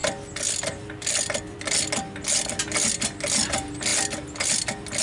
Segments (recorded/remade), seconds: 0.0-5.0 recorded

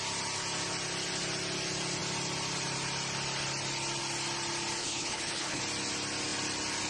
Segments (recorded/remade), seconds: 0.0-4.8 recorded; 4.8-5.6 remade; 5.6-6.9 recorded

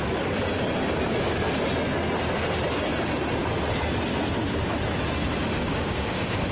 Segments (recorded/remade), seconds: 0.0-5.6 recorded; 5.6-6.5 remade